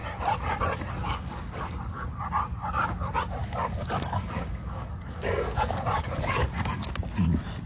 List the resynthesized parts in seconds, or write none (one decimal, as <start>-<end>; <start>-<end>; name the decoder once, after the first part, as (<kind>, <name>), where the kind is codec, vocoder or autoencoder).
1.0-1.7 (codec, DAC); 3.4-6.9